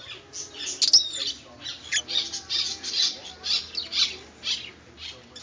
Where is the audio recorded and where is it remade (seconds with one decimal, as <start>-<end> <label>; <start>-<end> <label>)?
0.0-5.4 recorded